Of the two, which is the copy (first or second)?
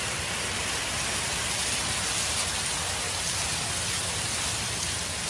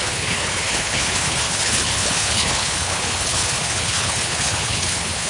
second